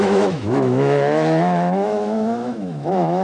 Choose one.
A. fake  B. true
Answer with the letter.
A